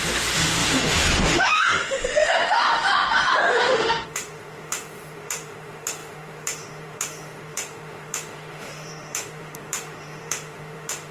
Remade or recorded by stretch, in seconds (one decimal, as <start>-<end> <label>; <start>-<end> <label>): 0.0-11.1 remade